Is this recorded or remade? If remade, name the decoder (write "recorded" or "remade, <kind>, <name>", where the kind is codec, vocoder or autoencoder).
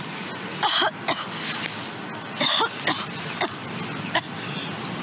recorded